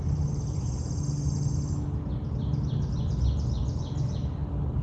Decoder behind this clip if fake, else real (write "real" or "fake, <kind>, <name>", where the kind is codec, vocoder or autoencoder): real